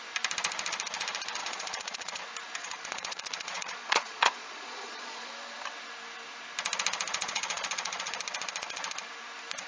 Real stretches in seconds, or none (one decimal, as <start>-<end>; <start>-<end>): 0.0-1.4; 2.2-2.6; 5.3-7.3; 8.1-9.7